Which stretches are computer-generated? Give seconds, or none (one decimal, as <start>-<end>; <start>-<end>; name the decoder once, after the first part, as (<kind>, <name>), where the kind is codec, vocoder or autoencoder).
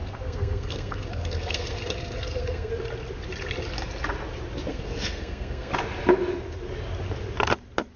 0.0-2.7 (codec, SNAC); 4.7-5.7